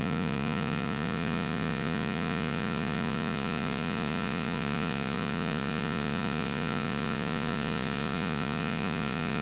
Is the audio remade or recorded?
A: remade